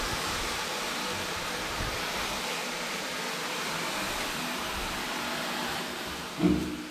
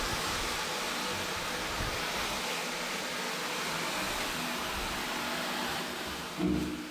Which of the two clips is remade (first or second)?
first